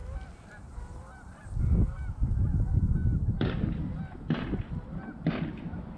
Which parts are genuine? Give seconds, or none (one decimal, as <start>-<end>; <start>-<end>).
1.6-3.0; 4.0-6.0